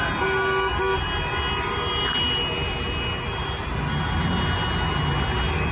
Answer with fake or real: real